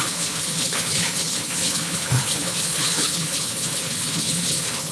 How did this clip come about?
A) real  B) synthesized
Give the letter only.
B